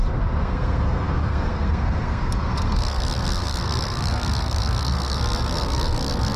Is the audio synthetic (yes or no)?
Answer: yes